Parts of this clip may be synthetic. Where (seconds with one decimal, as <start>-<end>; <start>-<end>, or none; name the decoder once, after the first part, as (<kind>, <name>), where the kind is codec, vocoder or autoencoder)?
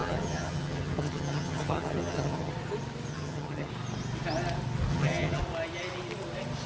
0.0-2.5 (vocoder, HiFi-GAN); 3.1-3.7; 4.9-5.4